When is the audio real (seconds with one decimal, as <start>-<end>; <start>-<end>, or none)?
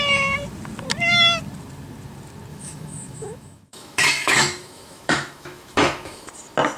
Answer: 0.0-2.5; 6.3-6.8